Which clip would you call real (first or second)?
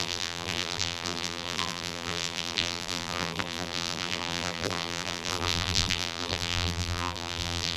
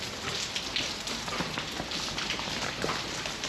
second